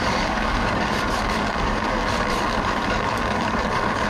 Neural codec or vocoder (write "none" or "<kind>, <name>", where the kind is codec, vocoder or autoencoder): codec, DAC